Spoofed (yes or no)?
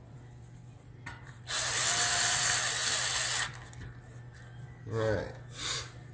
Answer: no